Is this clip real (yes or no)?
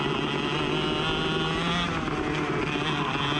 yes